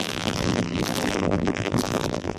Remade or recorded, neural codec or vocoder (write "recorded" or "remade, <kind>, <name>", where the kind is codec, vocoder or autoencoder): remade, vocoder, BigVGAN v2